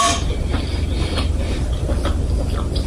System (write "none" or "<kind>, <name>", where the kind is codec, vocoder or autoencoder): none